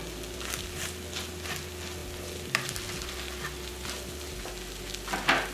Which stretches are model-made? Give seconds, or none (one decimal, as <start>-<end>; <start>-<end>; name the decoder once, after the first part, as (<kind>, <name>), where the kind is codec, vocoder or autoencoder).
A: none